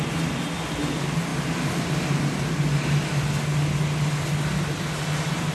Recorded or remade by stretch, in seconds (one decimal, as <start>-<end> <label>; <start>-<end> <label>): 0.0-5.5 recorded

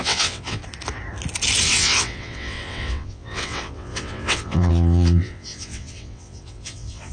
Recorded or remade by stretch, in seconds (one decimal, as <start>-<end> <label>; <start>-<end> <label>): 0.0-0.6 remade; 0.6-1.6 recorded; 1.6-7.1 remade

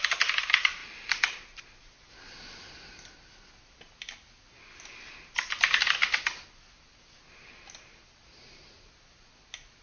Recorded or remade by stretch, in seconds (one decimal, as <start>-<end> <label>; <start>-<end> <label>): 0.0-9.8 recorded

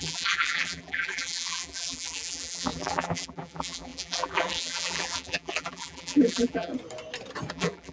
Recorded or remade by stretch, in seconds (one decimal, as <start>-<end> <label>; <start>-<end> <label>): 0.0-6.7 remade; 6.7-7.5 recorded; 7.5-7.9 remade

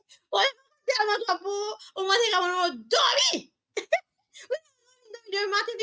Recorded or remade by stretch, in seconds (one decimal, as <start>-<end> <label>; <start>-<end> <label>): 0.0-5.8 recorded

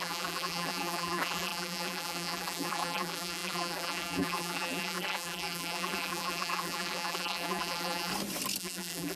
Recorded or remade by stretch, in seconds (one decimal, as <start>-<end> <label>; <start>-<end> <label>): 0.0-8.1 remade; 8.1-8.6 recorded; 8.6-9.2 remade

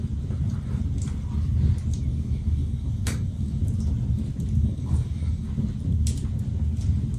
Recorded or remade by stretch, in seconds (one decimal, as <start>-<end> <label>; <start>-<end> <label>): 0.0-2.1 recorded; 2.1-3.6 remade; 3.6-4.6 recorded; 4.6-5.5 remade; 5.5-7.2 recorded

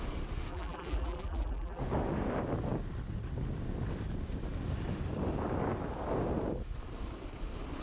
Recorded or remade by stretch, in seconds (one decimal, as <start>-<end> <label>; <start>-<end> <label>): 0.0-0.5 recorded; 0.5-1.8 remade; 1.8-7.8 recorded